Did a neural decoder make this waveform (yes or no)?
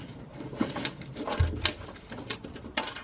no